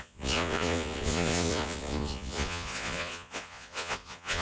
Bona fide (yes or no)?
no